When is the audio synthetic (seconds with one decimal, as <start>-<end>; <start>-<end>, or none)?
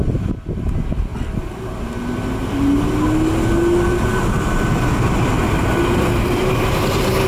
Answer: none